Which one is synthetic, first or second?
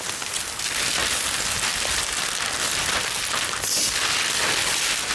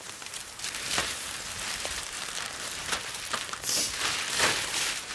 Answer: second